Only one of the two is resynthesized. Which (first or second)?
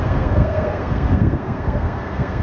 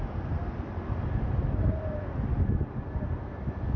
first